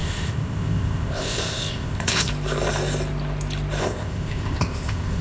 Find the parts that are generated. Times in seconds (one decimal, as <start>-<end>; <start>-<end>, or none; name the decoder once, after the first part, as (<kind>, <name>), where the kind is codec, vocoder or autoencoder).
0.0-2.3 (codec, ZipCodec); 3.8-5.2